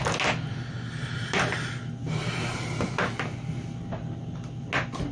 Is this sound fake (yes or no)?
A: no